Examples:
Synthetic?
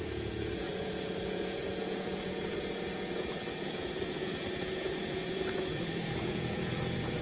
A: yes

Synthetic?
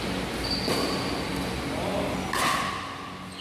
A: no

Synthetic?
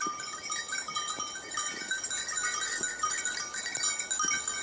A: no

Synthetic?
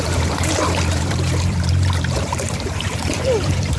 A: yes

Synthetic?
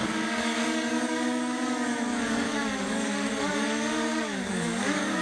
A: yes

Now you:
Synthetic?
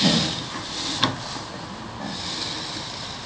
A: no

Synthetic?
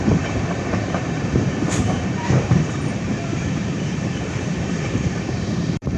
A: yes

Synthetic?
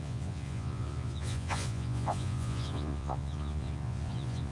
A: yes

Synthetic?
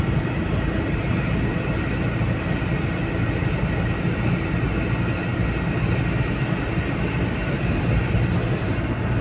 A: no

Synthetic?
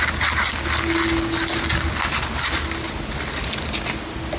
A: no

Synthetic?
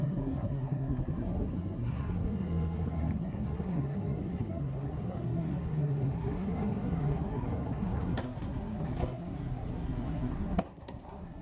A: yes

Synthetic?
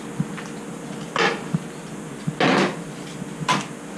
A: no